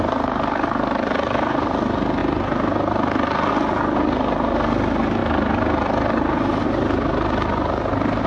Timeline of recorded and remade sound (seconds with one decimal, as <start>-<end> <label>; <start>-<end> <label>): 0.0-8.3 recorded